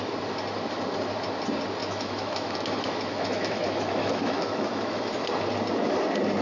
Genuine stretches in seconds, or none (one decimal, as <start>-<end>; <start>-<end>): 0.0-1.8; 5.1-6.4